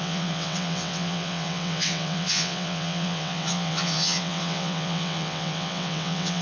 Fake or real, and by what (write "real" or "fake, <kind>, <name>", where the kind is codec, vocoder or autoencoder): fake, vocoder, WaveNeXt